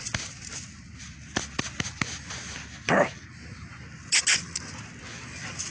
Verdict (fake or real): real